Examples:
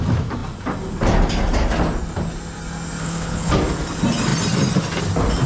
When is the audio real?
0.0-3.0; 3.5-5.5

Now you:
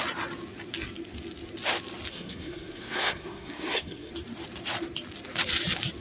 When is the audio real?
0.0-2.1; 4.1-6.0

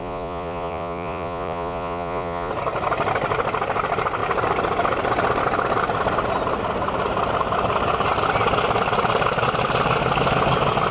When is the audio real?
2.5-10.9